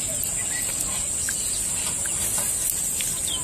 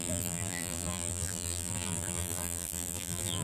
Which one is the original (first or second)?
first